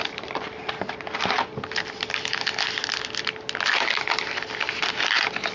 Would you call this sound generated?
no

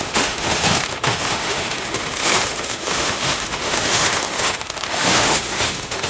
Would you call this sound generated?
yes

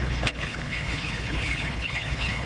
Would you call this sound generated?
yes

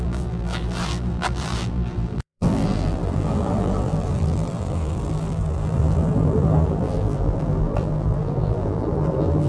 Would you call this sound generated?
yes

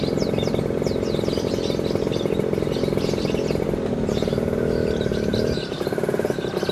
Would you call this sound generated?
no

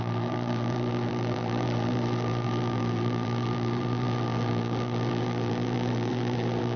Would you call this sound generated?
yes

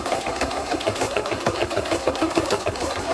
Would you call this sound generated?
yes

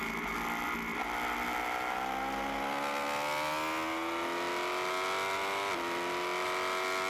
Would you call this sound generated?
no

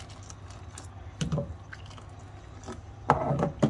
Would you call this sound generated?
no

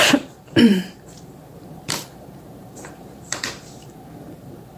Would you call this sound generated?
yes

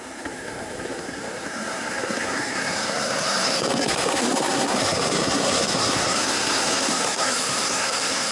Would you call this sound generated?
yes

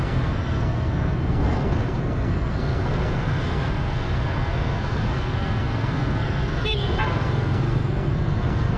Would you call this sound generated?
yes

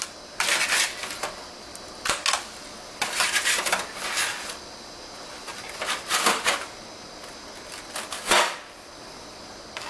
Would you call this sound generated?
no